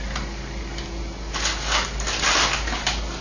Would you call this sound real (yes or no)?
yes